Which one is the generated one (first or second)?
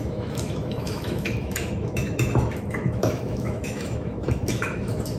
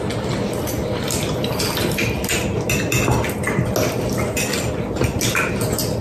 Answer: first